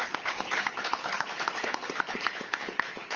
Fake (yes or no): yes